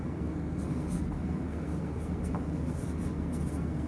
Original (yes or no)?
no